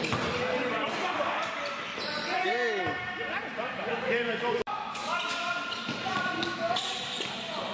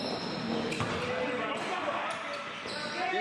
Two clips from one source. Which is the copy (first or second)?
first